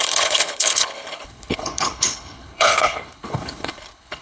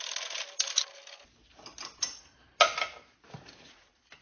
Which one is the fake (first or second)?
first